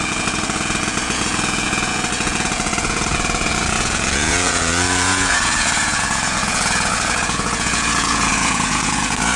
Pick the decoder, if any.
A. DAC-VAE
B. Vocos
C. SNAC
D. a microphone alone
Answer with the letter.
B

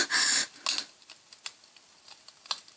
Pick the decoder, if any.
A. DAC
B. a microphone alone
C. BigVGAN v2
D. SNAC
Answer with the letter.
B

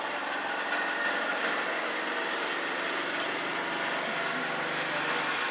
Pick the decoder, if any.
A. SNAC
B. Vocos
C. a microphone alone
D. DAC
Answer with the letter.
C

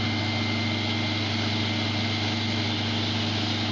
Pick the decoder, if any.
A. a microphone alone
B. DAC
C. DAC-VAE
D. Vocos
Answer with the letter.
A